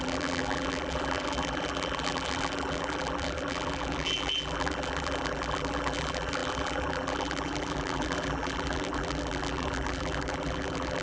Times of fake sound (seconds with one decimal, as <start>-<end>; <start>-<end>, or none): 0.0-11.0